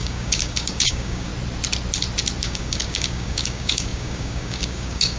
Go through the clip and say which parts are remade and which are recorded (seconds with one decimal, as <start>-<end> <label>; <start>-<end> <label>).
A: 0.0-1.3 remade; 1.3-2.4 recorded; 2.4-5.2 remade